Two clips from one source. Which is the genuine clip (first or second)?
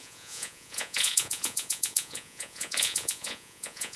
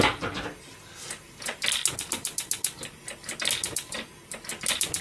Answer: second